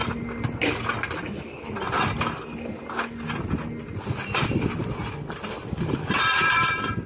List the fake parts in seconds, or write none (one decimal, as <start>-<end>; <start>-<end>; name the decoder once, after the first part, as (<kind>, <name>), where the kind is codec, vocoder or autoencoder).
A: 4.1-7.1 (vocoder, BigVGAN v2)